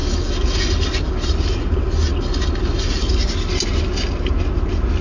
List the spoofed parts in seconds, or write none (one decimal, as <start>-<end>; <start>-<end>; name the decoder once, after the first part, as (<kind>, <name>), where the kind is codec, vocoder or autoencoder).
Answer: none